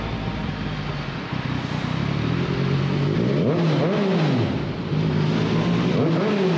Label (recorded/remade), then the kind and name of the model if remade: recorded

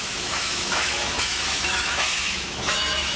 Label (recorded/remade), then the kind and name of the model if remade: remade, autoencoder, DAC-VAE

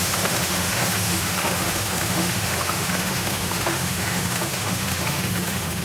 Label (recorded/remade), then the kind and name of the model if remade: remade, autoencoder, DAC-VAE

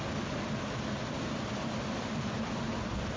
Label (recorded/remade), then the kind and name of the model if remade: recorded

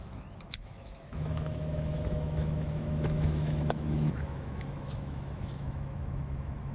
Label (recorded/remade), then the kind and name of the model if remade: remade, autoencoder, DAC-VAE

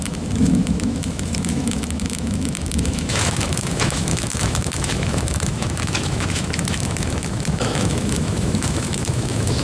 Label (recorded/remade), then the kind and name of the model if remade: remade, autoencoder, DAC-VAE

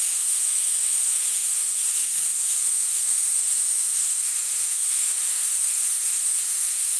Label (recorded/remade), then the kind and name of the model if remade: remade, autoencoder, DAC-VAE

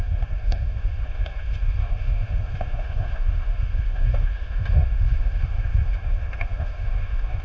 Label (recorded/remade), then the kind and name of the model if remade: remade, autoencoder, DAC-VAE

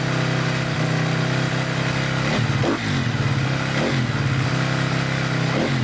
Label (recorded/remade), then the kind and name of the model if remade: recorded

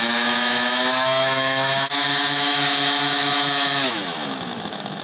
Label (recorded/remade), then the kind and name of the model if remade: remade, autoencoder, DAC-VAE